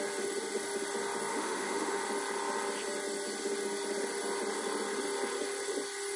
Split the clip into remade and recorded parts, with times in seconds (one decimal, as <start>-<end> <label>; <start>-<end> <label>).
0.0-1.3 recorded; 1.3-2.0 remade; 2.0-6.2 recorded